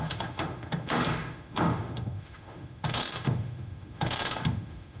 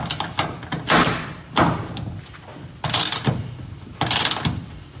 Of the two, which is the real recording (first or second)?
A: second